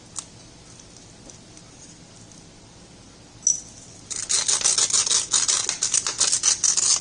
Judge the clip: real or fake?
real